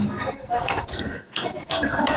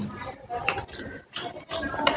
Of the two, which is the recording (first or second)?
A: second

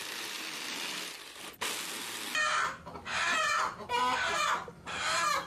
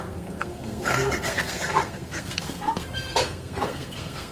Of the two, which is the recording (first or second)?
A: first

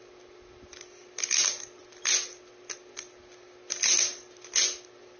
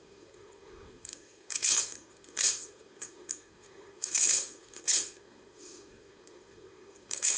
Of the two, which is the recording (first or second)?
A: first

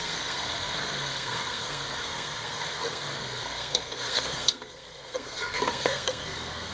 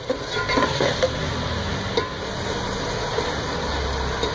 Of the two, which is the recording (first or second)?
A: second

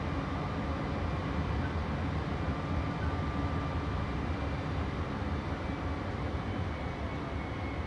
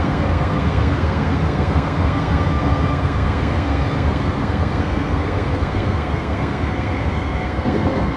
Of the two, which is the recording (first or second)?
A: first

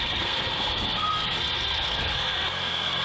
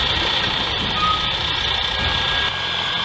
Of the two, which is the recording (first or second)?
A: second